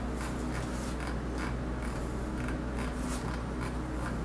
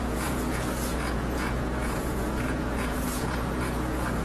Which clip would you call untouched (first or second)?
first